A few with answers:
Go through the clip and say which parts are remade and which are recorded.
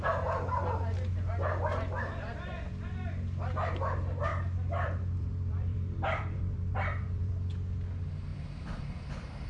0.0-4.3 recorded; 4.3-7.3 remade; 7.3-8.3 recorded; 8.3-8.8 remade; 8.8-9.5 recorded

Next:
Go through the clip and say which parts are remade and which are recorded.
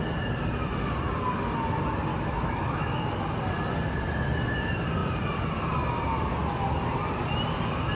0.0-2.1 recorded; 2.1-3.1 remade; 3.1-7.9 recorded